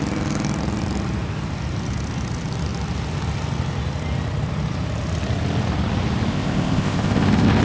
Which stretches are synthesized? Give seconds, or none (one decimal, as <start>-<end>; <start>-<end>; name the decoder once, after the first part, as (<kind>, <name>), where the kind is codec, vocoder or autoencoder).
6.3-7.6 (codec, ZipCodec)

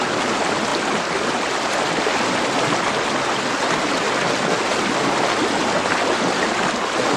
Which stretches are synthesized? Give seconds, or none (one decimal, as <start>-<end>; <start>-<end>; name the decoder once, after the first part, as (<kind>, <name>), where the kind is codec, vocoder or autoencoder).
none

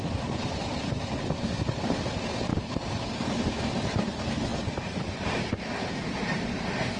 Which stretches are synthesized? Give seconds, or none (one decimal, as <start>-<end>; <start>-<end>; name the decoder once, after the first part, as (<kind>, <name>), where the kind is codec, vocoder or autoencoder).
none

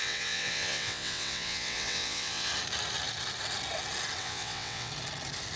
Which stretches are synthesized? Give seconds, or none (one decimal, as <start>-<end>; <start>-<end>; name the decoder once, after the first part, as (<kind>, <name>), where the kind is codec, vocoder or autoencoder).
0.0-2.5 (vocoder, WaveNeXt); 4.2-4.9

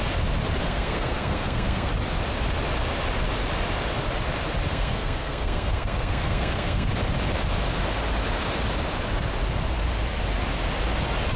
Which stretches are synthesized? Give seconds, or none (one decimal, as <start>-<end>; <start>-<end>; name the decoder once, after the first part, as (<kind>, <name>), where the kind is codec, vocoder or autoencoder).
0.6-1.9 (codec, SNAC); 4.7-6.9